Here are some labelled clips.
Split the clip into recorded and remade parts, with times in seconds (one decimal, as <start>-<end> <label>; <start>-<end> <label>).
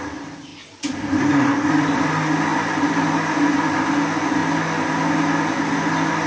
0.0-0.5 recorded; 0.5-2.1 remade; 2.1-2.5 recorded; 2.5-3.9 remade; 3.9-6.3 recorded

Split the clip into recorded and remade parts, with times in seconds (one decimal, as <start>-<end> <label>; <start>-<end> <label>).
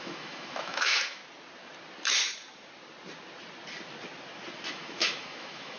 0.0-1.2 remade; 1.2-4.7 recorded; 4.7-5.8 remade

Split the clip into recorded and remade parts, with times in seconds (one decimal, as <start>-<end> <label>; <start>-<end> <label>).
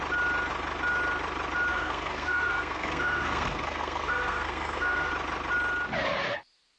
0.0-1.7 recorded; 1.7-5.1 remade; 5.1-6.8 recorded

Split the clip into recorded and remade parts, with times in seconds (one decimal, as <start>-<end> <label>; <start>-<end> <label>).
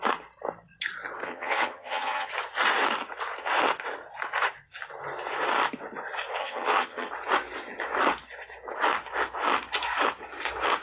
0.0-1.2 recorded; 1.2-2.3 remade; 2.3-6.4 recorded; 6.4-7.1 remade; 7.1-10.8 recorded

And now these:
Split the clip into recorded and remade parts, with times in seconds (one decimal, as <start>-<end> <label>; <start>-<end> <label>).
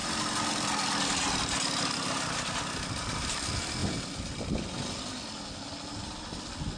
0.0-6.8 recorded